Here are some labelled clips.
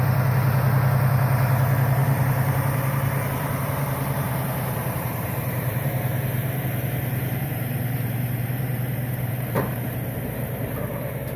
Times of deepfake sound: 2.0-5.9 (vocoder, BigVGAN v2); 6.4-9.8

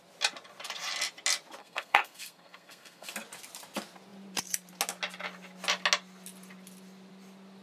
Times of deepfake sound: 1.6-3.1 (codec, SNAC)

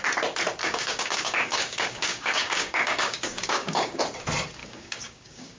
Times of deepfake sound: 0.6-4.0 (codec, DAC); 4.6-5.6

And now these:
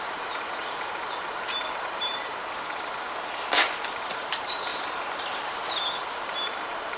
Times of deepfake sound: 0.0-2.4 (vocoder, BigVGAN v2); 4.2-4.7; 6.0-7.0